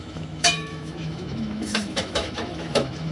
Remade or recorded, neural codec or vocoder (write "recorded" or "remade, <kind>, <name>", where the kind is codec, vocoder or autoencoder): remade, autoencoder, DAC-VAE